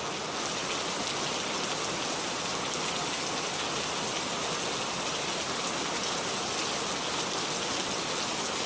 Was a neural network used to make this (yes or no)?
no